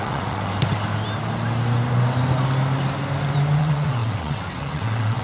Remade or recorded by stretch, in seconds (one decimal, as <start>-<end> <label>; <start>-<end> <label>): 0.0-0.5 remade; 0.5-3.6 recorded; 3.6-5.2 remade